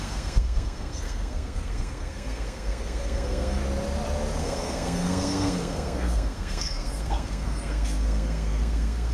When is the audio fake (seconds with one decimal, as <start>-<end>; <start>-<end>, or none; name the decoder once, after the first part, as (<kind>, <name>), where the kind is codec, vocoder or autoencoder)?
0.0-3.6 (codec, SNAC); 4.4-9.1